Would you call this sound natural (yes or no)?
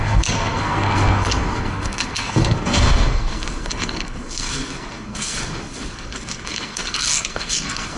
no